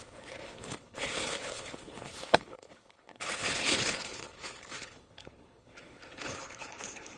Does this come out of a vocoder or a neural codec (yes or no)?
yes